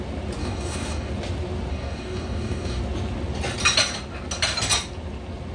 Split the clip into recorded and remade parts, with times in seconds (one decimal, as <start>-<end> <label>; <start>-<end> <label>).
0.0-0.4 recorded; 0.4-1.1 remade; 1.1-1.7 recorded; 1.7-2.8 remade; 2.8-5.5 recorded